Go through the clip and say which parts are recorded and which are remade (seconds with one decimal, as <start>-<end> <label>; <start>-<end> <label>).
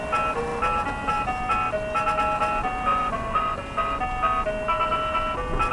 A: 0.0-2.9 recorded; 2.9-3.6 remade; 3.6-5.7 recorded